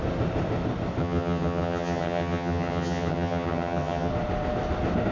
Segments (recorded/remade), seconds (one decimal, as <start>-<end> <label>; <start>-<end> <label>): 0.0-1.0 recorded; 1.0-4.1 remade; 4.1-5.1 recorded